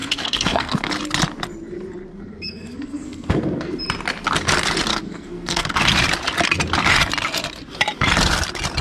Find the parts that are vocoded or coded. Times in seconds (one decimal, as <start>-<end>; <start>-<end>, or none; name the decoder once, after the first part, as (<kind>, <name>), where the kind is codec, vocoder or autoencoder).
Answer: 0.0-0.9 (codec, SNAC); 2.1-3.8; 4.9-5.8